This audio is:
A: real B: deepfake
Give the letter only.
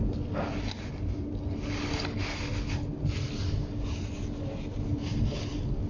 A